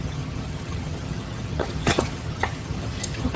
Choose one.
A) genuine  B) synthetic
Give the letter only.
B